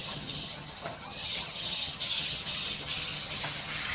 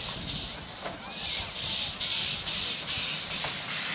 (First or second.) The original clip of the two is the second